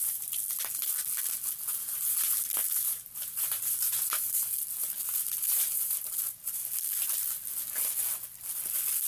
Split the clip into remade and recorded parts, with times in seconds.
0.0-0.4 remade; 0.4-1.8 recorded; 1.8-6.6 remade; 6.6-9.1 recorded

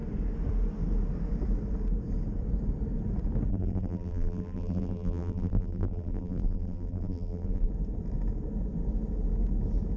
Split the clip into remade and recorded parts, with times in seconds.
0.0-3.5 recorded; 3.5-7.7 remade; 7.7-10.0 recorded

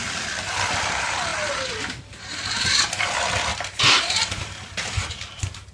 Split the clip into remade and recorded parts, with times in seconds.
0.0-3.5 recorded; 3.5-5.7 remade

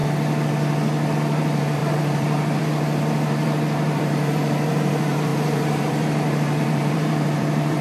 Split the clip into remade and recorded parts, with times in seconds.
0.0-1.1 recorded; 1.1-7.8 remade

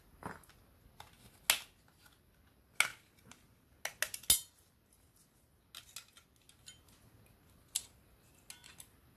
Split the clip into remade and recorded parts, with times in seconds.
0.0-9.2 recorded